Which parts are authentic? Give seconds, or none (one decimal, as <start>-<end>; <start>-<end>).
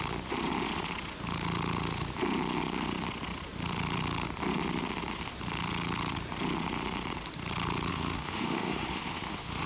0.0-7.9